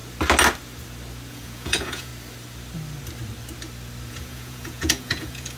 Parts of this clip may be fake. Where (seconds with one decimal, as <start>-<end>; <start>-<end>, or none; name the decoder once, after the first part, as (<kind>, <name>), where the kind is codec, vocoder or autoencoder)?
1.3-2.1 (vocoder, Vocos); 4.1-5.6